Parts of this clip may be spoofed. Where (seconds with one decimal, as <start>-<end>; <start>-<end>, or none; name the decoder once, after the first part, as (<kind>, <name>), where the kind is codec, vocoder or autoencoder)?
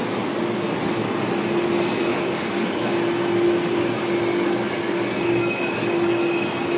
2.1-2.9 (codec, DAC); 4.3-6.1